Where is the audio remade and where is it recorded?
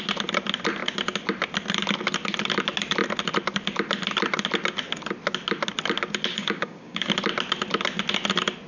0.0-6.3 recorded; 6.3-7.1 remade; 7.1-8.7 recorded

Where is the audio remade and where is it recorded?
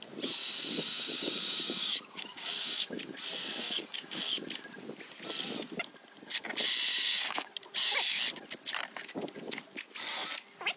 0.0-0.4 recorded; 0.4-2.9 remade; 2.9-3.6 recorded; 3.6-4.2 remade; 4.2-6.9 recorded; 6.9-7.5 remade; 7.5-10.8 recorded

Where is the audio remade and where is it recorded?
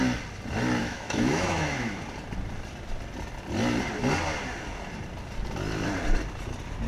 0.0-0.8 recorded; 0.8-2.0 remade; 2.0-6.9 recorded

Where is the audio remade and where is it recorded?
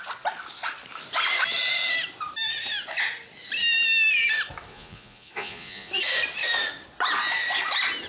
0.0-4.7 recorded; 4.7-5.9 remade; 5.9-8.1 recorded